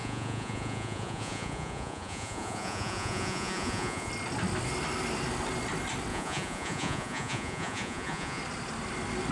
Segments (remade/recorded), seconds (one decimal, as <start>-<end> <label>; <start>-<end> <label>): 0.0-4.1 remade; 4.1-6.1 recorded; 6.1-8.4 remade; 8.4-9.3 recorded